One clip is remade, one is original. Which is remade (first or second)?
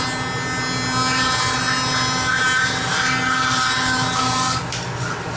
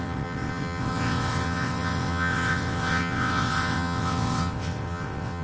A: second